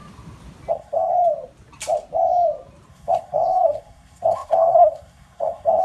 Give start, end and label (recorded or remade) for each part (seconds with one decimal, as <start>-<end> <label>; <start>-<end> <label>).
0.0-0.7 recorded; 0.7-1.1 remade; 1.1-2.9 recorded; 2.9-5.8 remade